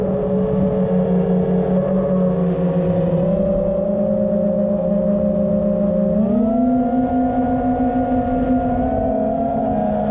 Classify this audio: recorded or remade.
recorded